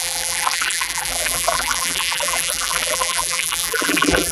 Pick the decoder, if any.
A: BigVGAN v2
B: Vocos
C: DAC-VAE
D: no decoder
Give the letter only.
A